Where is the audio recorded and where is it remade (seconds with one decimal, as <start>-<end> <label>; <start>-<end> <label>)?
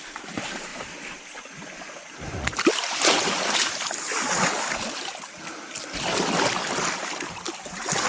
0.0-8.1 recorded